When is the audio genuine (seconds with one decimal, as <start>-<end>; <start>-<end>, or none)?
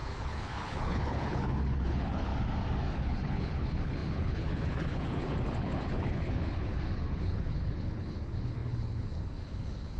2.3-2.9